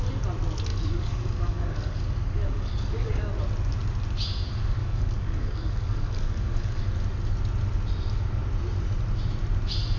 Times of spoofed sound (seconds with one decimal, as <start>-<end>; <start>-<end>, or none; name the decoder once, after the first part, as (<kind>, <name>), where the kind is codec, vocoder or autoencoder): 0.7-3.3 (codec, DAC); 4.8-6.8